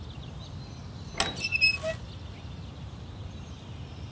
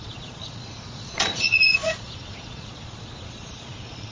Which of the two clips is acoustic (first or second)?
first